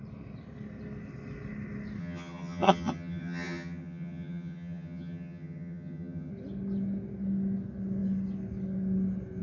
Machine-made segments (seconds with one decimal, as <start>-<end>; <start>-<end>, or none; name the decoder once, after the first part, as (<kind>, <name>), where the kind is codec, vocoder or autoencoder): 2.0-6.3 (vocoder, HiFi-GAN)